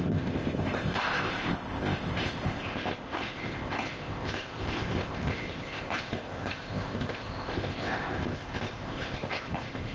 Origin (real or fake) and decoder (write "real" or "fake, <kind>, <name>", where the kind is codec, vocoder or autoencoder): fake, codec, ZipCodec